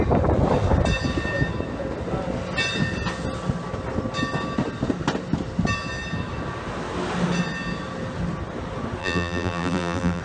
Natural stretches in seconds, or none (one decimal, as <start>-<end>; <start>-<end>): 0.0-9.0